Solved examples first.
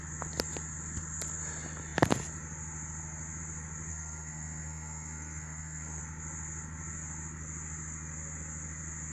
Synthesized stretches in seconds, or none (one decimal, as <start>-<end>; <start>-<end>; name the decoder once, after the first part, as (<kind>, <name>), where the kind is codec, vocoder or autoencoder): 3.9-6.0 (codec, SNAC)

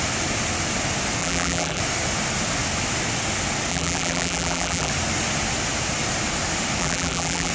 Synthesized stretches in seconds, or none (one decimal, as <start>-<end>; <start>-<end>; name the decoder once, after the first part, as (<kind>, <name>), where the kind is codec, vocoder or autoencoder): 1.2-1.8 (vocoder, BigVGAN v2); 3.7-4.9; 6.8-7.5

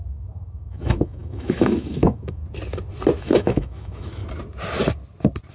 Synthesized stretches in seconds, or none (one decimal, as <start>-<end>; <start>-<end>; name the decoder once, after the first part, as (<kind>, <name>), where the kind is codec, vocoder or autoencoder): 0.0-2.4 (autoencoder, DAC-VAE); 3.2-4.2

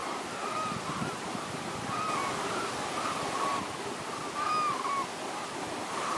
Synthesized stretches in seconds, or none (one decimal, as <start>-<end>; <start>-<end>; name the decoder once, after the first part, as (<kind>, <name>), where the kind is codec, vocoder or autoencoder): none